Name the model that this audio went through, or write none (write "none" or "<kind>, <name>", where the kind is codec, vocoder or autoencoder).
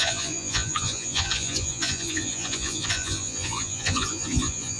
vocoder, Vocos